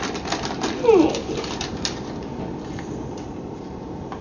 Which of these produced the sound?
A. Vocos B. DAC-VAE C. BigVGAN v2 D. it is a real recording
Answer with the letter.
D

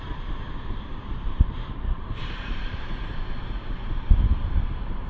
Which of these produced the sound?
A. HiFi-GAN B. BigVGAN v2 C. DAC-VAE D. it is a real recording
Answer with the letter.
B